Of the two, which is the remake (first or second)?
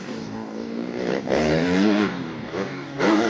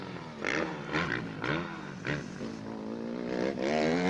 first